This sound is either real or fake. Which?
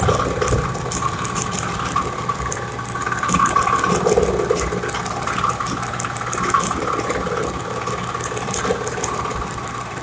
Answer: real